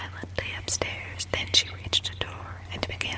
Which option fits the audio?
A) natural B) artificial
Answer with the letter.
A